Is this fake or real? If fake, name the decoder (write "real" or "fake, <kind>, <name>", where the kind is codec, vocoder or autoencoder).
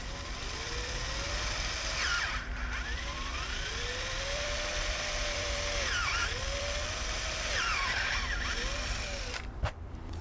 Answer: fake, vocoder, BigVGAN v2